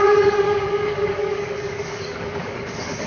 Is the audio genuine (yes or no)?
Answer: no